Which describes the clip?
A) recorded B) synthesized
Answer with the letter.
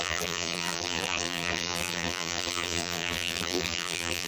B